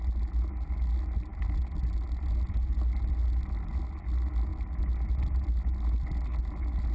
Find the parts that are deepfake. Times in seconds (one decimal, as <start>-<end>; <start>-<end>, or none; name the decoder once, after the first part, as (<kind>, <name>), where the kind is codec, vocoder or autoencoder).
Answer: none